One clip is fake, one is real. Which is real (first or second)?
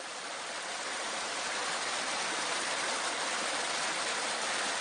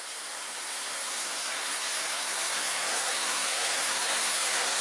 first